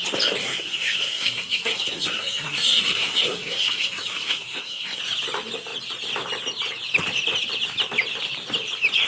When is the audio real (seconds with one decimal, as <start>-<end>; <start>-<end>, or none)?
0.0-0.4; 5.0-9.1